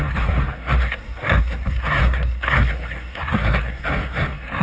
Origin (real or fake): fake